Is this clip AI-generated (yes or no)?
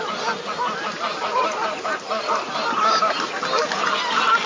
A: no